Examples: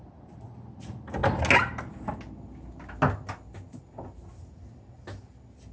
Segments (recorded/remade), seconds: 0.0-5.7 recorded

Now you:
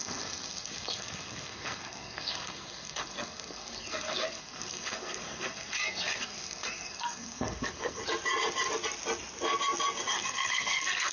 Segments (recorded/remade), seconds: 0.0-8.0 remade; 8.0-10.1 recorded; 10.1-11.1 remade